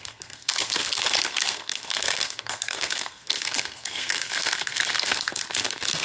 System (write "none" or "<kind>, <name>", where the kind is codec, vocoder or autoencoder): codec, SNAC